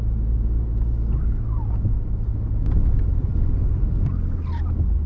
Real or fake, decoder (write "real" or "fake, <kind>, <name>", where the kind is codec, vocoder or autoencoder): real